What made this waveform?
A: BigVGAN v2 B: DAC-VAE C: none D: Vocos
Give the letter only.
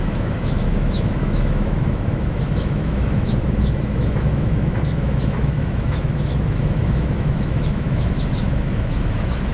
B